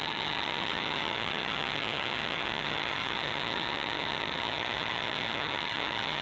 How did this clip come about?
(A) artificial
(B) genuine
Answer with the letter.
A